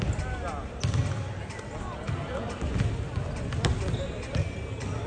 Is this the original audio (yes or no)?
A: yes